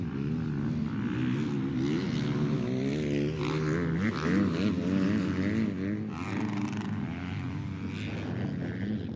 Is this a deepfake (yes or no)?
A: no